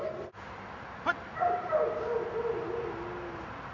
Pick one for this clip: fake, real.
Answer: real